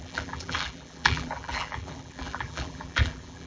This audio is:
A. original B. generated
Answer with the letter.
B